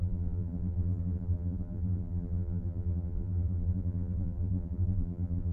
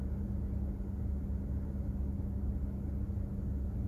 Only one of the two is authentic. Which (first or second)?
second